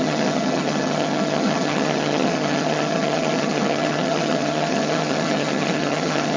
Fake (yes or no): yes